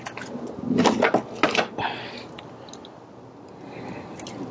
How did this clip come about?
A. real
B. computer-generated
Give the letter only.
A